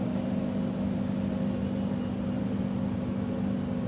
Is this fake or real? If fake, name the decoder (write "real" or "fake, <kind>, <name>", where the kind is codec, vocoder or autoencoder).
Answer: real